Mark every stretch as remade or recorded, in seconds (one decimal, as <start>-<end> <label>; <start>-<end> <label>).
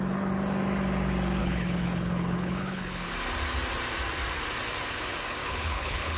0.0-1.4 recorded; 1.4-3.1 remade; 3.1-5.4 recorded; 5.4-6.2 remade